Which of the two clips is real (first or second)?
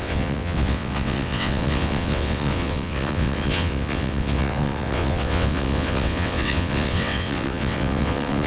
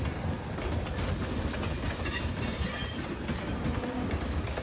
second